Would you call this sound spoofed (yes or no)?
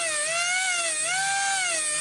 no